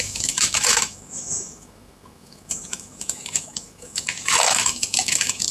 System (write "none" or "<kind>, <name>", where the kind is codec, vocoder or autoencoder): autoencoder, DAC-VAE